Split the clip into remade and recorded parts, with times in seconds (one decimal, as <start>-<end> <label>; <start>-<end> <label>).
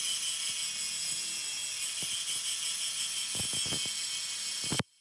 0.0-5.0 recorded